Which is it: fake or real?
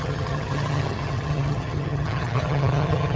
fake